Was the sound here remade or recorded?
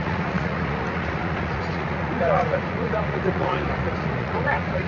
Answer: remade